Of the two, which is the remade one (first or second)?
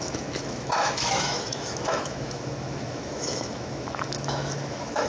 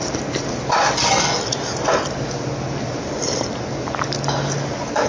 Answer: first